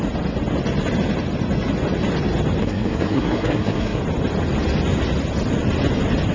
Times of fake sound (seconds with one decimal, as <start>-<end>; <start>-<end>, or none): 2.6-4.0